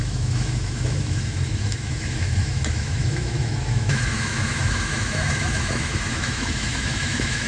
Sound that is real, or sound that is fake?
fake